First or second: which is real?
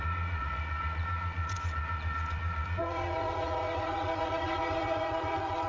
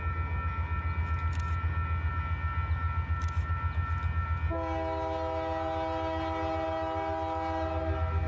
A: second